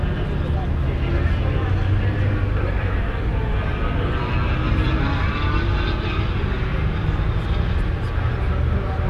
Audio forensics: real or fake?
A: real